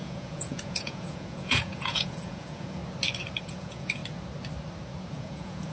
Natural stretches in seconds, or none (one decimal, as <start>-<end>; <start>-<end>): 2.8-3.4; 4.0-5.1